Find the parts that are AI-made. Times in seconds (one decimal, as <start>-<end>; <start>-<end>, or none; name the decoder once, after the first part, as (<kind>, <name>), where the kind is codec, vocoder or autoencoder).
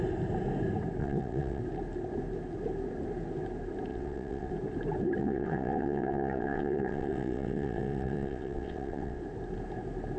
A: 1.0-1.6 (vocoder, WaveNeXt); 3.9-4.5; 5.2-9.2